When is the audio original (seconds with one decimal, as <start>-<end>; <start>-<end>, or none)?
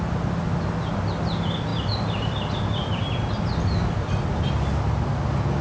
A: 0.0-5.6